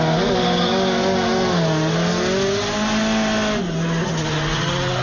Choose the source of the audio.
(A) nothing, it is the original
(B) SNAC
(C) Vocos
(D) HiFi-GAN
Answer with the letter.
A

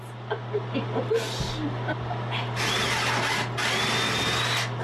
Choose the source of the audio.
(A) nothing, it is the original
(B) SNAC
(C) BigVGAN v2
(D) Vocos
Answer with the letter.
A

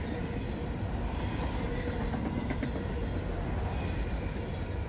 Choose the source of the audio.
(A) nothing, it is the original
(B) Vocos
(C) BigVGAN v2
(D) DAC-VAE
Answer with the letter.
A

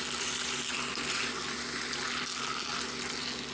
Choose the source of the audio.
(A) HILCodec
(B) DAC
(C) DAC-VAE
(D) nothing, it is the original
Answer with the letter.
D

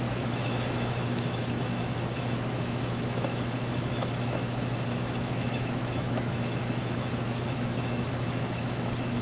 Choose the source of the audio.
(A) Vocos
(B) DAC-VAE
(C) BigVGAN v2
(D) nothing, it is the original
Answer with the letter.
B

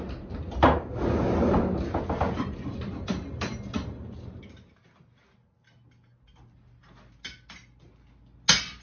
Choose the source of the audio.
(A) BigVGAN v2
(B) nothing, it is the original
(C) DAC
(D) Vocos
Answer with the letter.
B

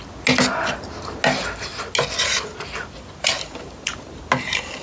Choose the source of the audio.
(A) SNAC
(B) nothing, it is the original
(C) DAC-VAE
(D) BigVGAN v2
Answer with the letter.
B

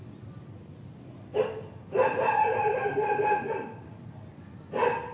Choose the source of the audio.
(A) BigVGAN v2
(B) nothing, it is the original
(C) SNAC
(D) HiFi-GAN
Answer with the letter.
B